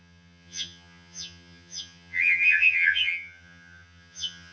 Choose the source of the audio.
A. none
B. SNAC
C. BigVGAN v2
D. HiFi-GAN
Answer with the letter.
D